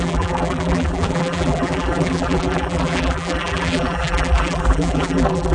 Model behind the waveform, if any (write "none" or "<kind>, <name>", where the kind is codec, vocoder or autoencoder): vocoder, BigVGAN v2